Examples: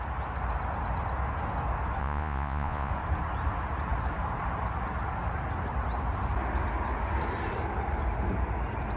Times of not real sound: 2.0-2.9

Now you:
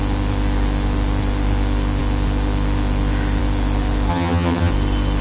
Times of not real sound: 4.1-4.7

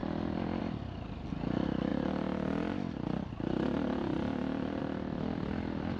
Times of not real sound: none

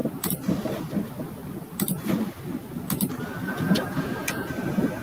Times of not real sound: 3.4-4.5

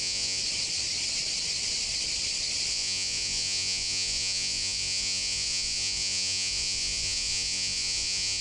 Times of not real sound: 0.0-0.4; 2.7-8.4

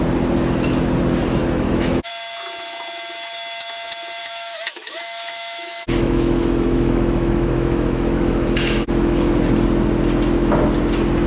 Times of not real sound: 1.4-2.1; 4.2-9.3